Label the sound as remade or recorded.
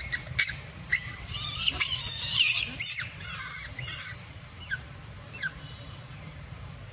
remade